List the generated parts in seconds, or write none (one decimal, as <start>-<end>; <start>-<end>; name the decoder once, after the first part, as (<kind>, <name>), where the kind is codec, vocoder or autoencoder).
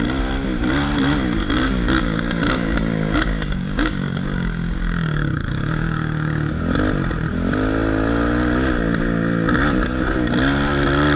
1.4-6.5 (codec, DAC)